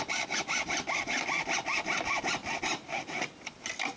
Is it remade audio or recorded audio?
recorded